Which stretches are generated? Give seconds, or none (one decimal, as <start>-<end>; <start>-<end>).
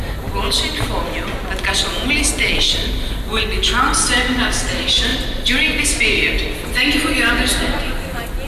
none